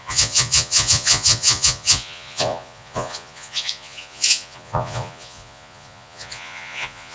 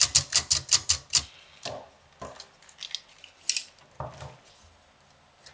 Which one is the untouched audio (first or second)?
second